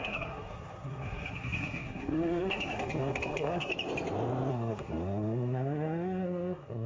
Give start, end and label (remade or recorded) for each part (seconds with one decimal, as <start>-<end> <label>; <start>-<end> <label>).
0.0-3.7 remade; 3.7-4.5 recorded; 4.5-6.9 remade